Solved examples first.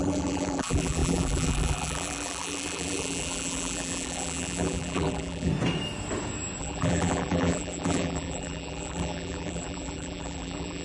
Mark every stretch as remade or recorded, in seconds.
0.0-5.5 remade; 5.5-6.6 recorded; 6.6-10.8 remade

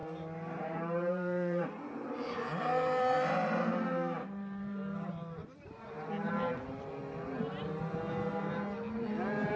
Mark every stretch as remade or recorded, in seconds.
0.0-0.6 recorded; 0.6-5.4 remade; 5.4-6.3 recorded; 6.3-7.0 remade; 7.0-9.6 recorded

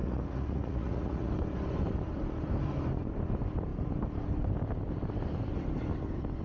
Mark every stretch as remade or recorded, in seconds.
0.0-1.3 remade; 1.3-6.4 recorded